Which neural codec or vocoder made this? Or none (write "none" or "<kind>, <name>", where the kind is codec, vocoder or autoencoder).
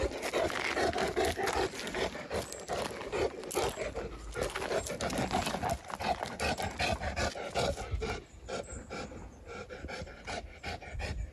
none